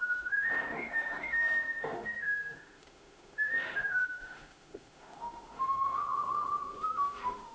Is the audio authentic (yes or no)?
no